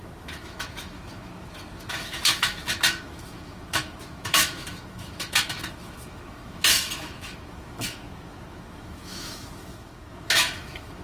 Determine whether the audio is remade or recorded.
remade